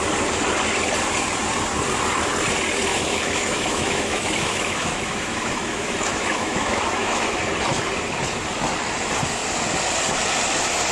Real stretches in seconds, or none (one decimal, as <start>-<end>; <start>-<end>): 0.0-2.9; 7.4-10.9

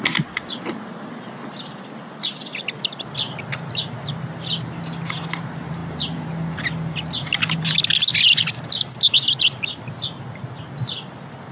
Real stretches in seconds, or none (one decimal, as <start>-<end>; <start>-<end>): 0.0-11.5

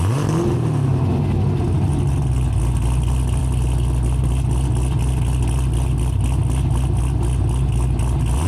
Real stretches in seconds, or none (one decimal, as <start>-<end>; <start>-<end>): 0.0-8.5

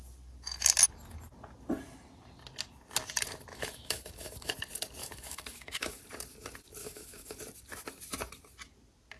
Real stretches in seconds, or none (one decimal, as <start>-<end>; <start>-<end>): 0.0-3.5; 4.5-5.0; 6.0-6.8; 7.4-9.2

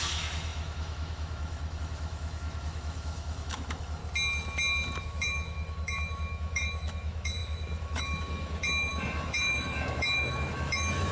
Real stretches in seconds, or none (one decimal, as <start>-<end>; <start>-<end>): 4.0-5.0

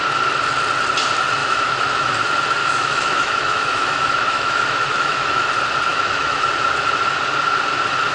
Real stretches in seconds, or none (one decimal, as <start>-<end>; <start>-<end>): 0.0-1.4; 2.1-2.6; 5.5-5.9; 6.5-8.1

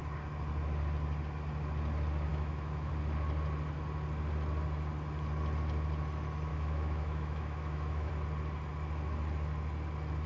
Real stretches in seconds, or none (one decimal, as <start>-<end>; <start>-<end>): 0.0-2.3; 2.9-6.5; 8.1-10.3